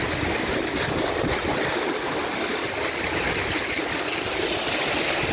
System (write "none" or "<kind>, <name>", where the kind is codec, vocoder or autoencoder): none